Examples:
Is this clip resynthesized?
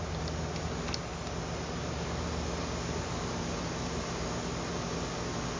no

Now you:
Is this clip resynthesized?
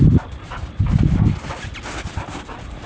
no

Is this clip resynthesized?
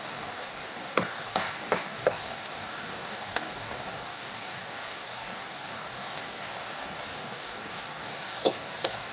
yes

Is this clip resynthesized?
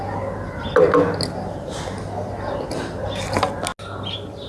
no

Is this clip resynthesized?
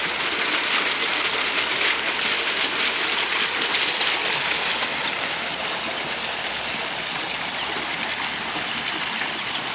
no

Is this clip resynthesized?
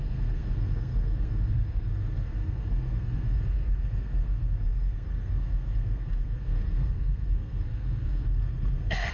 yes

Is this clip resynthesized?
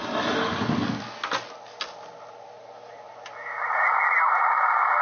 no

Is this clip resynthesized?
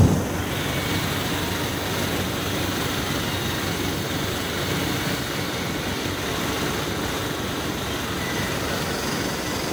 no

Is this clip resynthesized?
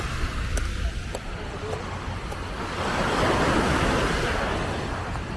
no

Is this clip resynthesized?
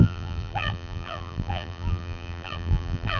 yes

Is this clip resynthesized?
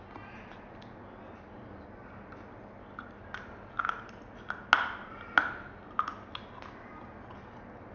no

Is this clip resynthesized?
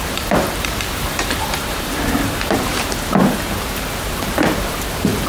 yes